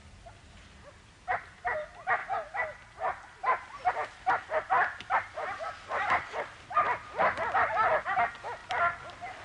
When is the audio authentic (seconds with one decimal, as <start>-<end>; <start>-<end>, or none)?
0.0-9.4